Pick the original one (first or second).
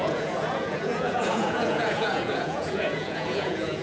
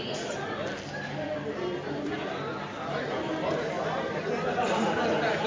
second